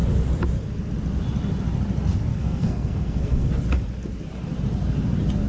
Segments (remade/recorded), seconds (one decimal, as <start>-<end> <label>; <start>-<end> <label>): 0.0-2.3 recorded; 2.3-3.5 remade; 3.5-5.5 recorded

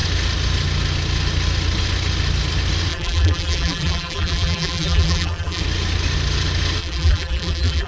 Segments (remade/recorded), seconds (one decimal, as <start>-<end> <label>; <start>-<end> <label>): 0.0-2.9 recorded; 2.9-5.6 remade; 5.6-6.8 recorded; 6.8-7.9 remade

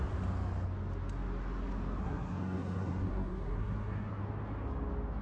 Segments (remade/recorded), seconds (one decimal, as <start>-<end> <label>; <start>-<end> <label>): 0.0-2.0 recorded; 2.0-4.2 remade; 4.2-5.2 recorded

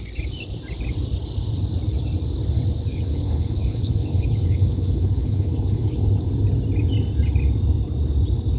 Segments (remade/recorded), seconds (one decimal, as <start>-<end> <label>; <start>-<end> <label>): 0.0-2.9 recorded; 2.9-6.3 remade; 6.3-8.6 recorded

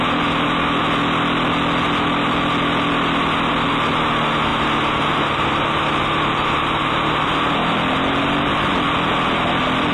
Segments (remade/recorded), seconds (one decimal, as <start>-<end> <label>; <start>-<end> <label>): 0.0-4.5 recorded; 4.5-7.3 remade; 7.3-9.9 recorded

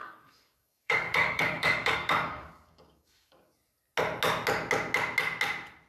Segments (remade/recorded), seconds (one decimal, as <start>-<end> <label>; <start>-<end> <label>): 0.0-3.5 remade; 3.5-5.9 recorded

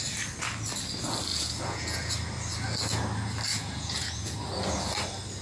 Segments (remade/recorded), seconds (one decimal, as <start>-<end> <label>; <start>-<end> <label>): 0.0-1.3 recorded; 1.3-2.1 remade; 2.1-3.5 recorded; 3.5-4.4 remade; 4.4-5.4 recorded